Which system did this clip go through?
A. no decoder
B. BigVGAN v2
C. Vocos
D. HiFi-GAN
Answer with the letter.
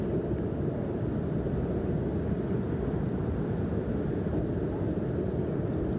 A